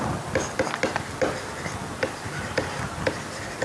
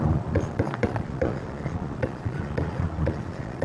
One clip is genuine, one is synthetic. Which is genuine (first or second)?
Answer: first